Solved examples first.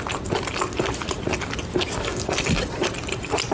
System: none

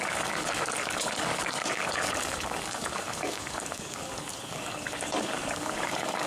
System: codec, DAC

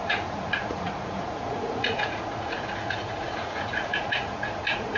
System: vocoder, Vocos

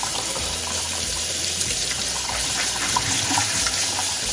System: vocoder, BigVGAN v2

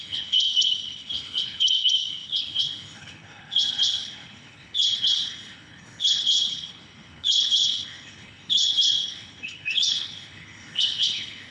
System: codec, HILCodec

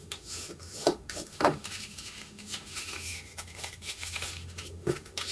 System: autoencoder, DAC-VAE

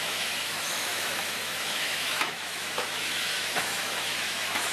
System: autoencoder, DAC-VAE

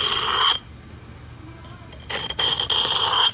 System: none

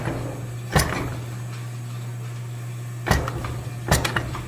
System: none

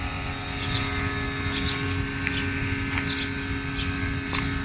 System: none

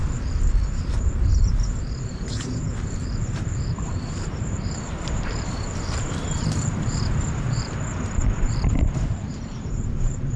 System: vocoder, BigVGAN v2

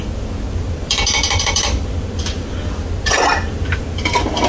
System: none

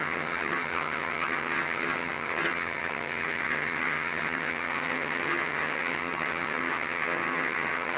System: vocoder, HiFi-GAN